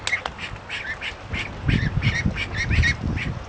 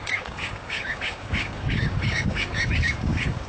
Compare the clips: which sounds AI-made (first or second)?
second